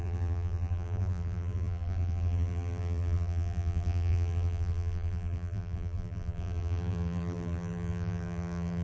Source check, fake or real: fake